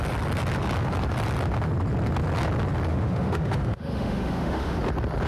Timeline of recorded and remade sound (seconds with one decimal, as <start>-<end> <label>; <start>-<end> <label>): 0.0-2.9 recorded; 2.9-4.8 remade; 4.8-5.3 recorded